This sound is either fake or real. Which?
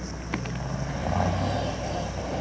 real